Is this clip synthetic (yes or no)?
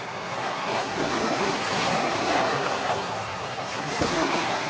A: yes